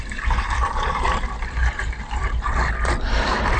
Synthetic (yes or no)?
yes